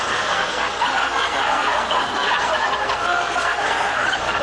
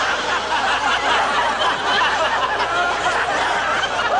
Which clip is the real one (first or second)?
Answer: second